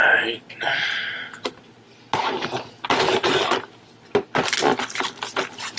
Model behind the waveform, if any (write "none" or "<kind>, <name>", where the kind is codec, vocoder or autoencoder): none